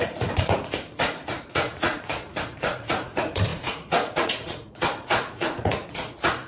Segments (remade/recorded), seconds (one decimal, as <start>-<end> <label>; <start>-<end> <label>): 0.0-6.5 remade